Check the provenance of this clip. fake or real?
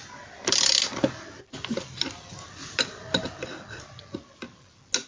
real